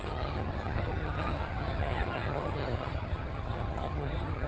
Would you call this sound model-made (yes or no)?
yes